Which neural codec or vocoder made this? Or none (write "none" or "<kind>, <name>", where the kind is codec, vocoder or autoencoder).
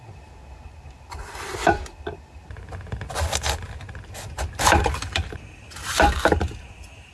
none